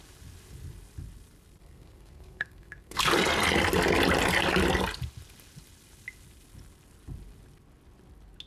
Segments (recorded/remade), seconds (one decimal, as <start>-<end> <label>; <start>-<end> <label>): 0.0-1.6 recorded; 1.6-3.0 remade; 3.0-8.5 recorded